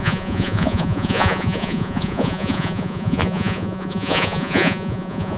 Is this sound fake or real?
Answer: fake